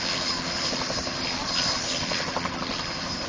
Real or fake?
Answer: real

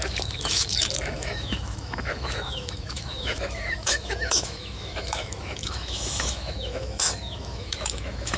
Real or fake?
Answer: fake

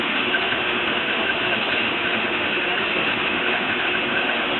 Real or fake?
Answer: fake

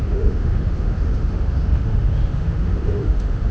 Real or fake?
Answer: fake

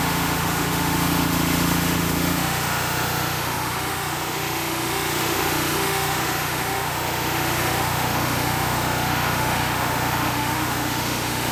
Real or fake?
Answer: fake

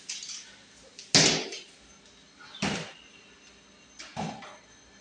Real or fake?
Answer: real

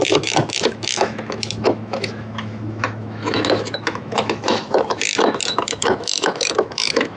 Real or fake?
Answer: fake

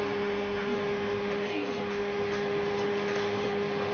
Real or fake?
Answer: fake